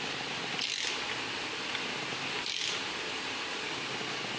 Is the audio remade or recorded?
remade